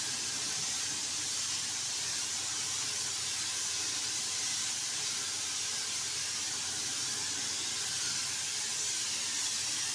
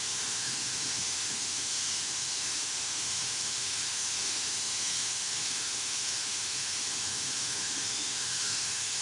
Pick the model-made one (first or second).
second